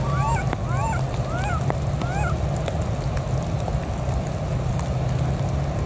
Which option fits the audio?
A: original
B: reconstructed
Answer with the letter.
A